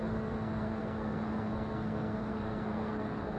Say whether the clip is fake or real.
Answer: fake